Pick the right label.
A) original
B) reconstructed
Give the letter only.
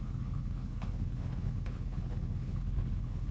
B